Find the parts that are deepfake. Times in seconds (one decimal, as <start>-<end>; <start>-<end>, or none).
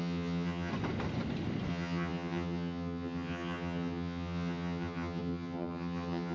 0.0-0.7; 1.7-6.3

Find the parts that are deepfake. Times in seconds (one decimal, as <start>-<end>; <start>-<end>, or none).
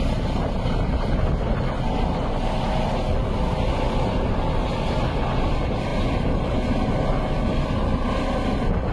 none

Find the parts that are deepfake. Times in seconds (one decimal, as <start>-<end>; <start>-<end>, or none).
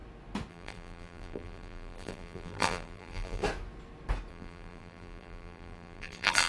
0.5-3.4; 4.3-6.5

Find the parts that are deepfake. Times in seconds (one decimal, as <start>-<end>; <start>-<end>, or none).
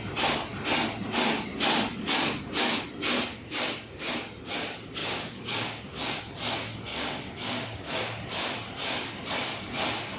3.3-4.1; 5.0-6.2; 6.9-8.1